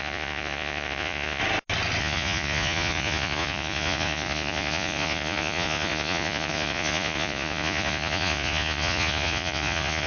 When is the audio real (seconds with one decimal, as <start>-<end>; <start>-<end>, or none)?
1.4-2.0